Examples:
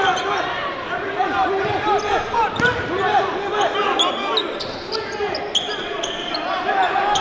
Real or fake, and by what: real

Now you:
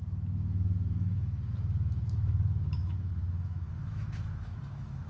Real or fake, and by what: fake, autoencoder, DAC-VAE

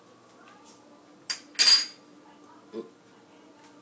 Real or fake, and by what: real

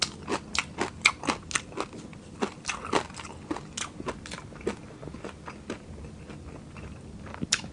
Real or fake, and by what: real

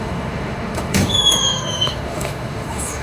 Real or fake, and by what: fake, autoencoder, DAC-VAE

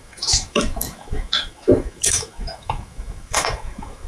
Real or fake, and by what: fake, autoencoder, DAC-VAE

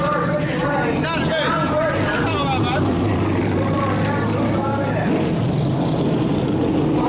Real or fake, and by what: real